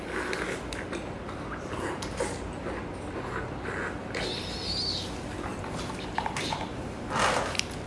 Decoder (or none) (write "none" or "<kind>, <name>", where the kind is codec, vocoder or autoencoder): none